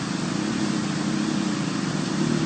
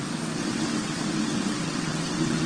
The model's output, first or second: second